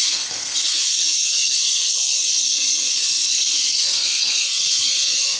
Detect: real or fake fake